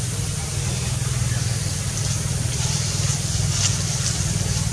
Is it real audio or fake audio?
fake